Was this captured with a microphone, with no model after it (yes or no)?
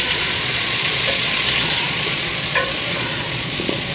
no